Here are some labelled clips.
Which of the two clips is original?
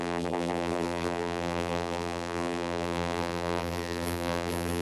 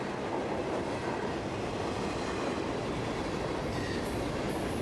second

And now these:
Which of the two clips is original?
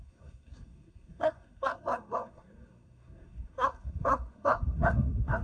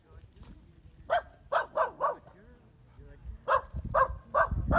second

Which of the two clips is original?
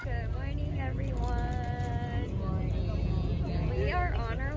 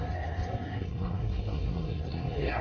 first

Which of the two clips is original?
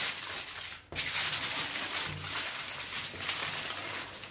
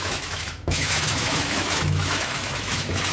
first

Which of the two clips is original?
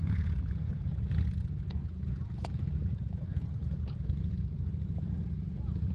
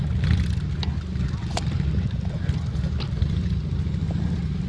second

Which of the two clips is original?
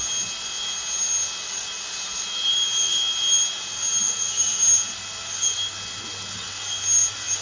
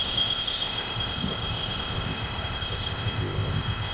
first